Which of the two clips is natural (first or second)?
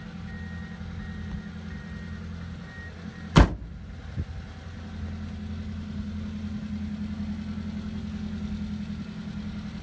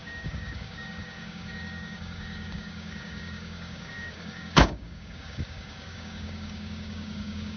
first